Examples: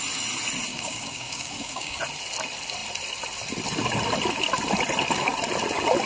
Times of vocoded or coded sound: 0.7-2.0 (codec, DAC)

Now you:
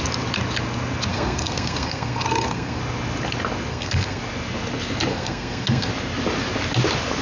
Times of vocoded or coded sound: 1.1-2.8 (codec, SNAC); 3.7-4.2; 5.1-5.9

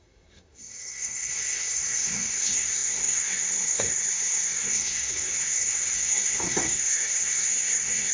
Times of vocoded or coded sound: 0.0-8.1 (codec, SNAC)